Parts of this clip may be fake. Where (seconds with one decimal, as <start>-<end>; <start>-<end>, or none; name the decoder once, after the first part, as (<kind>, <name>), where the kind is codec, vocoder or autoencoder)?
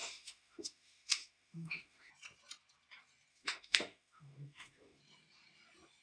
0.0-2.1 (autoencoder, DAC-VAE); 3.3-5.0